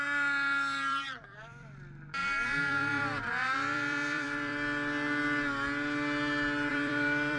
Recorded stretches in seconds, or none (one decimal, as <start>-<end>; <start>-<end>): 4.5-6.7